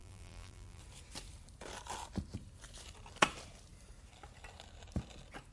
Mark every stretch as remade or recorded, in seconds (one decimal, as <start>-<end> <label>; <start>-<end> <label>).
0.0-0.8 remade; 0.8-5.5 recorded